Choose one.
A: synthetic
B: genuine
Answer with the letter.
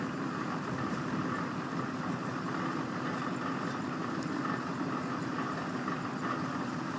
A